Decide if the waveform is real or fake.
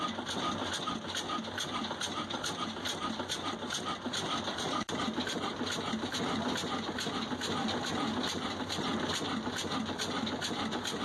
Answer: real